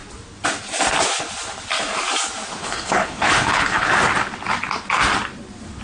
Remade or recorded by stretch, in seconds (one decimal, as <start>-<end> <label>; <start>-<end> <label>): 0.0-2.6 recorded; 2.6-3.9 remade; 3.9-5.8 recorded